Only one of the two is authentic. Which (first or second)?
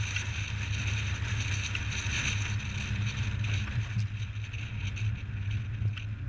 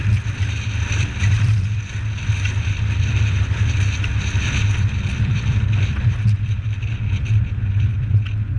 first